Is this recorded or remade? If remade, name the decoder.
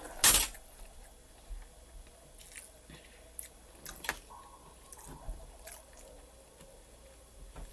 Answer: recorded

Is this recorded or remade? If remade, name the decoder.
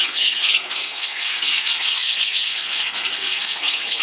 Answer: remade, codec, SNAC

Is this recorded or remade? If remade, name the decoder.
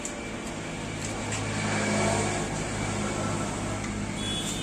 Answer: recorded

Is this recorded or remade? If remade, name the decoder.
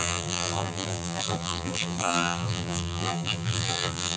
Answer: remade, vocoder, BigVGAN v2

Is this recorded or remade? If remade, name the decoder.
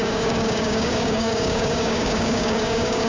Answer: remade, codec, DAC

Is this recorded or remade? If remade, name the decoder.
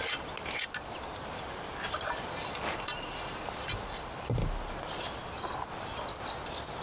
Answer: recorded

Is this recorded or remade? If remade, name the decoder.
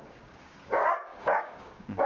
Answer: remade, codec, DAC